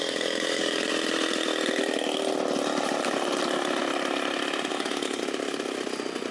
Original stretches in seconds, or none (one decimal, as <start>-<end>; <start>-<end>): 0.9-4.7; 5.2-6.3